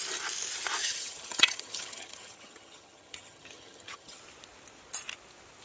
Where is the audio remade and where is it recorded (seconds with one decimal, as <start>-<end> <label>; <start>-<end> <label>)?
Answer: 0.0-0.8 recorded; 0.8-4.2 remade; 4.2-5.6 recorded